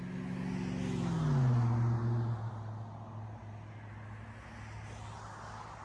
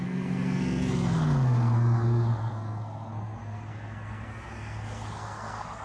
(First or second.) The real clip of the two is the first